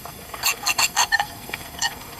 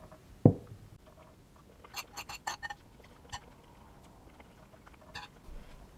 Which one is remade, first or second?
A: first